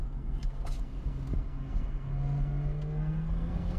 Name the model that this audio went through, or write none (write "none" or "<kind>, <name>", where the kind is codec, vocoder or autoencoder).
codec, SNAC